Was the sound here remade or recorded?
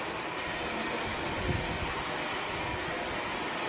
recorded